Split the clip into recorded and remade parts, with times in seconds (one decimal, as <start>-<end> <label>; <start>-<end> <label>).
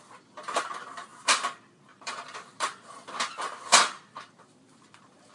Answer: 0.0-5.3 remade